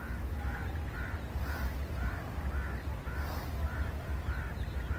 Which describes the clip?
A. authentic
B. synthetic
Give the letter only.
A